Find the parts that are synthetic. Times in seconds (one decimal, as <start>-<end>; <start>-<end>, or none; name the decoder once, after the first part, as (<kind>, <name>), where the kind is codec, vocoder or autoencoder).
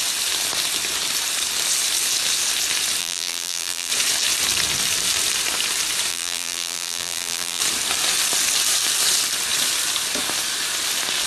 3.0-3.9 (vocoder, BigVGAN v2); 6.1-7.6